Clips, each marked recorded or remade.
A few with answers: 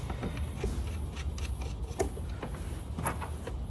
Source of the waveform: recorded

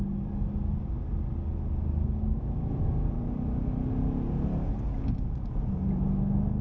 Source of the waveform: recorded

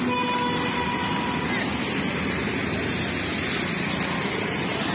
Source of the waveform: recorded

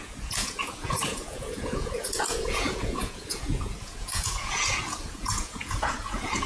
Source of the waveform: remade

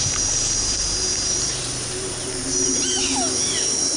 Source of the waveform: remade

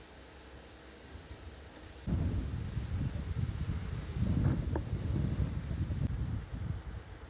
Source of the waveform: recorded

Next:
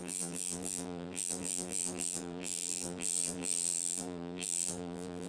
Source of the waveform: remade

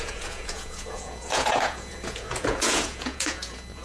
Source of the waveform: remade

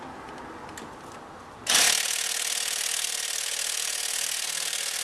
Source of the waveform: recorded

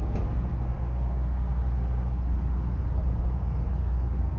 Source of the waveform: remade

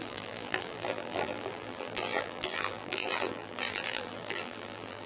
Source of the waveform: remade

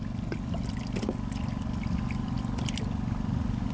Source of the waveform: recorded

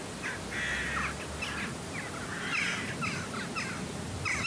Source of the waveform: recorded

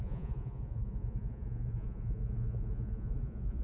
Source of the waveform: remade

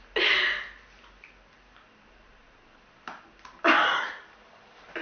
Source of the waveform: recorded